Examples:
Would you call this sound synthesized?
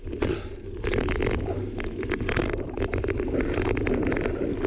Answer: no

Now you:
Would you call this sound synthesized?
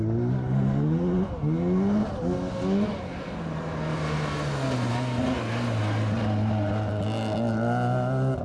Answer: no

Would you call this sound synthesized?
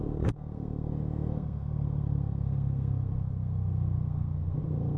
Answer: yes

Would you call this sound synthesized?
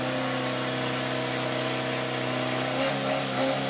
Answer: no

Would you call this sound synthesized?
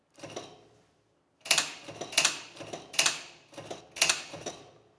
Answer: no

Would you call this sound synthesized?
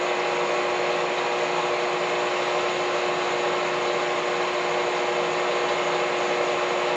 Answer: no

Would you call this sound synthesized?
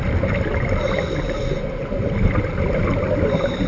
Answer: no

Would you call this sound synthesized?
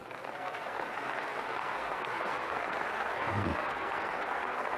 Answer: yes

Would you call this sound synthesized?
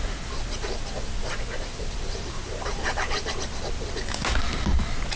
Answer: no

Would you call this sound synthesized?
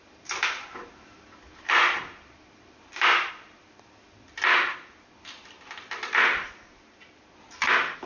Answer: no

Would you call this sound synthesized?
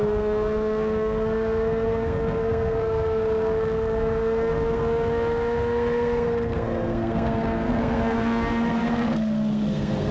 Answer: yes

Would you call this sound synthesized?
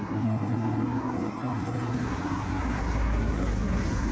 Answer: yes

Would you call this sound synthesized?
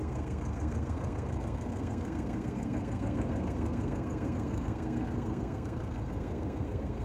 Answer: yes